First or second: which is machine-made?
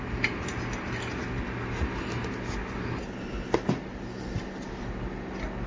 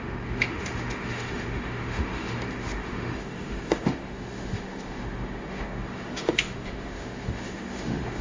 second